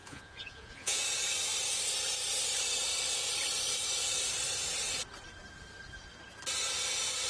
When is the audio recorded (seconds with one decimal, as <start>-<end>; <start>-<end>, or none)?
1.0-7.3